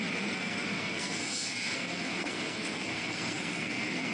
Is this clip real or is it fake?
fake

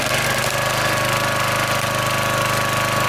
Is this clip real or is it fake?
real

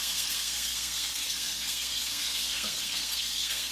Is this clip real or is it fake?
fake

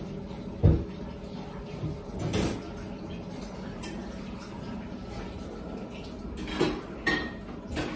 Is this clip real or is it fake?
real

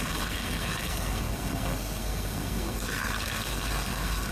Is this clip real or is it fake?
fake